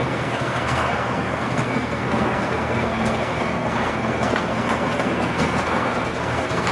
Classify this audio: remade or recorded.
remade